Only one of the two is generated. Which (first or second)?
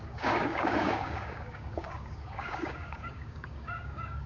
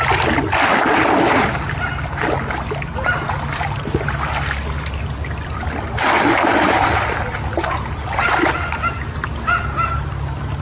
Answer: first